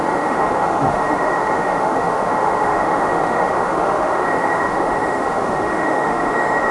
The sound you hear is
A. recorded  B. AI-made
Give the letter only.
B